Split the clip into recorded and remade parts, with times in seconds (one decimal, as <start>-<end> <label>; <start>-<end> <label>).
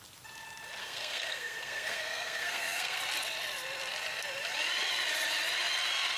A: 0.0-0.8 recorded; 0.8-3.0 remade; 3.0-6.2 recorded